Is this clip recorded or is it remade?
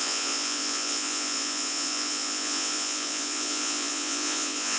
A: remade